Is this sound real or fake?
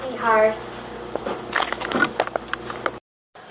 real